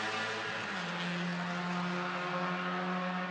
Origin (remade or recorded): recorded